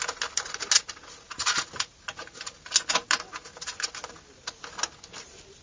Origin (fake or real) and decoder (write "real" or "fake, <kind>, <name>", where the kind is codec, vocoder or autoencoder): real